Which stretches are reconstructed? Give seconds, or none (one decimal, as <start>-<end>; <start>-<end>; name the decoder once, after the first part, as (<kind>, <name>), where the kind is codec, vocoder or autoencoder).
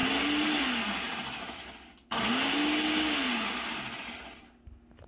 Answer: none